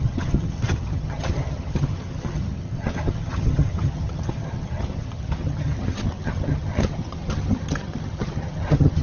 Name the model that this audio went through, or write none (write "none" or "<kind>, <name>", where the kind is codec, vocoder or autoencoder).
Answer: vocoder, HiFi-GAN